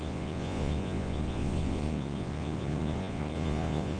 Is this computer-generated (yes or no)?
yes